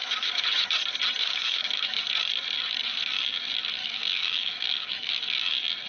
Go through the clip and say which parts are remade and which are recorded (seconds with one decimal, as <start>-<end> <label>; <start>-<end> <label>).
0.0-0.7 remade; 0.7-1.2 recorded; 1.2-2.0 remade; 2.0-3.8 recorded; 3.8-5.1 remade; 5.1-5.9 recorded